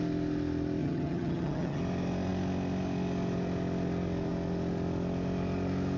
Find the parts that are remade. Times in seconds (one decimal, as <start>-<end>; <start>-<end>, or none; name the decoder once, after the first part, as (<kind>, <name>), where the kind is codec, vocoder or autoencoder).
0.8-1.8 (vocoder, HiFi-GAN)